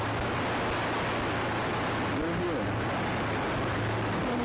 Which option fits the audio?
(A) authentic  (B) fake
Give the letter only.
A